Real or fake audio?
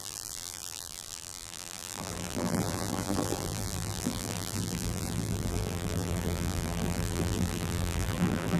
fake